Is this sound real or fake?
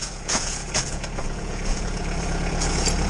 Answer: fake